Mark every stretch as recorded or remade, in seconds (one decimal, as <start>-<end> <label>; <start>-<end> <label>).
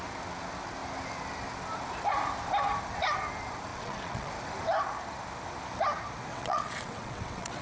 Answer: 0.0-3.7 recorded; 3.7-4.3 remade; 4.3-6.3 recorded; 6.3-7.6 remade